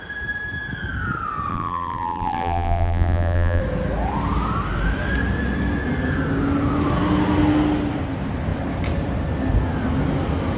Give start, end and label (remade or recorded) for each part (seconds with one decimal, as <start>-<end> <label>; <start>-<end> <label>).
0.0-1.5 recorded; 1.5-3.6 remade; 3.6-10.6 recorded